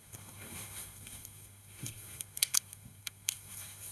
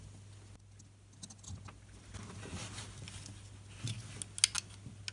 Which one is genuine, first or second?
second